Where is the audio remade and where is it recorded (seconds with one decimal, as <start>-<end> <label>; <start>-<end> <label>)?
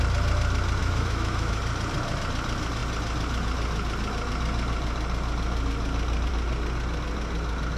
0.0-0.8 recorded; 0.8-1.6 remade; 1.6-7.8 recorded